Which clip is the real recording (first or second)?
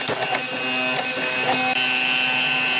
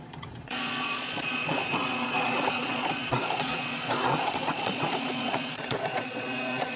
first